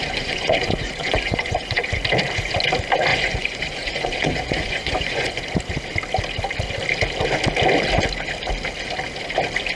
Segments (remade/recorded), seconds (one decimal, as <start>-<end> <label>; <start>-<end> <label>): 0.0-1.8 remade; 1.8-3.1 recorded; 3.1-5.4 remade; 5.4-9.7 recorded